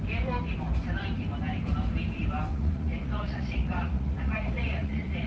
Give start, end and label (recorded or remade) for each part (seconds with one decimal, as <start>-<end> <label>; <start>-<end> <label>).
0.0-2.5 recorded; 2.5-5.3 remade